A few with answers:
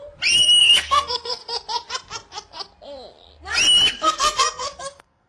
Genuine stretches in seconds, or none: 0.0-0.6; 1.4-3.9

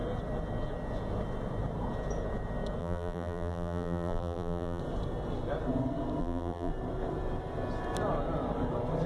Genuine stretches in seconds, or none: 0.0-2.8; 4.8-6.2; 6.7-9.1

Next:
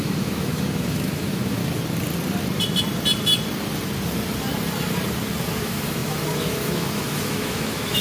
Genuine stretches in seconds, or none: 1.6-5.6

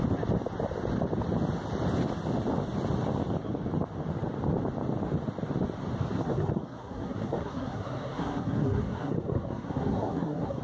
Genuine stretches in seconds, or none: 0.0-6.2